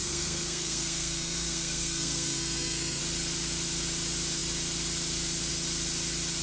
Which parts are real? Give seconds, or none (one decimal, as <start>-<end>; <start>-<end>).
3.0-6.4